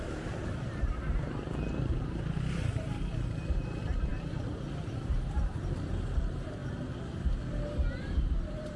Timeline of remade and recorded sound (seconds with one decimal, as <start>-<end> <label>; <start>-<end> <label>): 0.0-6.6 remade; 6.6-8.1 recorded; 8.1-8.8 remade